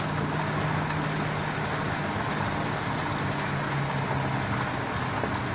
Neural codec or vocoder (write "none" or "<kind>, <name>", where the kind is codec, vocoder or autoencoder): none